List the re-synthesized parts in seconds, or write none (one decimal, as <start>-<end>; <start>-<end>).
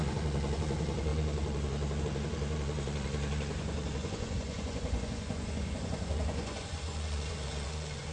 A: 0.0-8.1